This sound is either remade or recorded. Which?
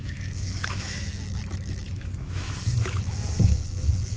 remade